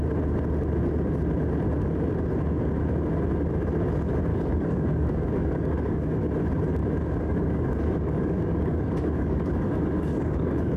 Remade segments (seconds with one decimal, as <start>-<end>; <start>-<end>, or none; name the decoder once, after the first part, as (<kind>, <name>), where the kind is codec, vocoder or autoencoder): 4.3-6.3 (codec, DAC); 6.8-10.8